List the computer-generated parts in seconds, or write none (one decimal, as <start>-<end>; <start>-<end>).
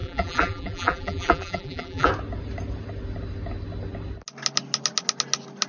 0.0-2.1